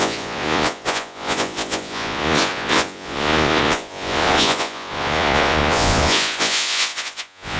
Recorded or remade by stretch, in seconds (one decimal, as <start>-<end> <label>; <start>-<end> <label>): 0.0-7.6 remade

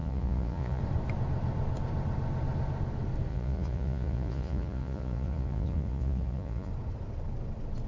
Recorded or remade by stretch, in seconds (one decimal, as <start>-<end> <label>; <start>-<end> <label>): 0.0-0.8 remade; 0.8-3.3 recorded; 3.3-6.7 remade; 6.7-7.9 recorded

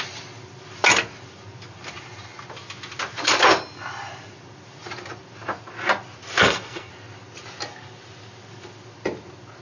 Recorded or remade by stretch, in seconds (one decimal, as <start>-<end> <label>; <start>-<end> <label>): 0.0-6.4 recorded; 6.4-6.9 remade; 6.9-9.6 recorded

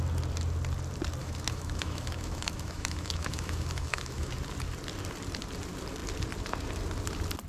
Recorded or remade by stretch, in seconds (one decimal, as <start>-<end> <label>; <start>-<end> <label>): 0.0-1.2 recorded; 1.2-4.3 remade; 4.3-7.5 recorded

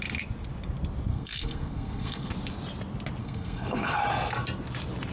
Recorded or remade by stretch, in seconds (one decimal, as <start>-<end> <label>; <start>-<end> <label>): 0.0-1.1 recorded; 1.1-2.3 remade; 2.3-3.2 recorded; 3.2-4.0 remade; 4.0-5.1 recorded

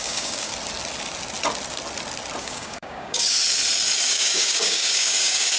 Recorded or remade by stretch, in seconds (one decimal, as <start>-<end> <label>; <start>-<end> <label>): 0.0-0.5 remade; 0.5-2.4 recorded; 2.4-3.4 remade; 3.4-4.0 recorded; 4.0-5.6 remade